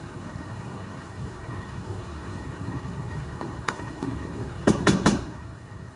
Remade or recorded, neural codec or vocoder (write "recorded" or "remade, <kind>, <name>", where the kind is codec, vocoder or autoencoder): remade, codec, SNAC